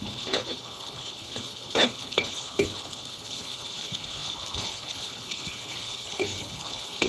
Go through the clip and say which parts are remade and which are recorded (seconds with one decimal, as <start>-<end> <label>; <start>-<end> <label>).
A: 0.0-7.1 remade

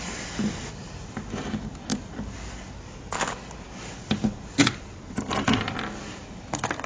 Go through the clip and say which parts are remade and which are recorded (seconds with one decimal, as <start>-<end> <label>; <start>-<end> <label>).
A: 0.0-6.9 recorded

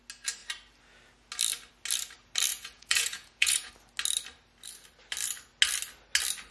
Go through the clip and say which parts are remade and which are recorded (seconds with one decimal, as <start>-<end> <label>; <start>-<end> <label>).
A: 0.0-2.5 recorded; 2.5-3.7 remade; 3.7-6.5 recorded

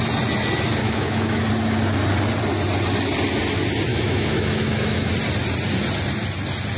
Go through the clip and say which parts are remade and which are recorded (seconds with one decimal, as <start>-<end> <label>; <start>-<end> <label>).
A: 0.0-0.8 recorded; 0.8-1.5 remade; 1.5-3.9 recorded; 3.9-5.1 remade; 5.1-6.8 recorded

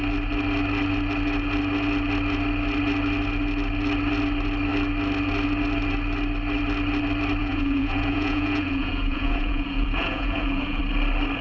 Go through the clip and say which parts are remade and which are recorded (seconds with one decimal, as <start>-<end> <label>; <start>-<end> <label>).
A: 0.0-7.4 recorded; 7.4-10.8 remade; 10.8-11.4 recorded

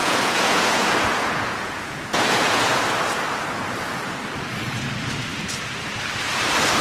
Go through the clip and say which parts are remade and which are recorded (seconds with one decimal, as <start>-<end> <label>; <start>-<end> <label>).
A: 0.0-2.8 remade; 2.8-6.8 recorded

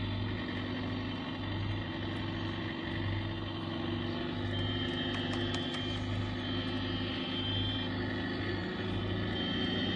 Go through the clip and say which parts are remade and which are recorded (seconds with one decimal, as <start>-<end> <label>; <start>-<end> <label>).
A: 0.0-10.0 recorded